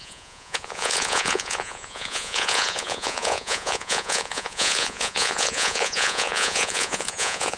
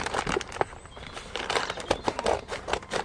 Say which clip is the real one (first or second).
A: second